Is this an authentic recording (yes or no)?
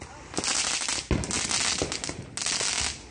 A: yes